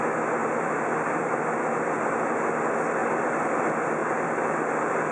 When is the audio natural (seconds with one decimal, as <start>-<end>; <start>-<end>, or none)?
0.0-0.4; 1.4-4.0